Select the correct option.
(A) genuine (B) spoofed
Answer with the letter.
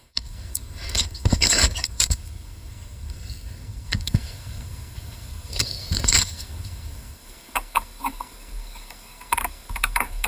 B